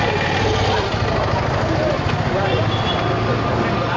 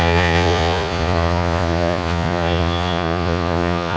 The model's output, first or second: second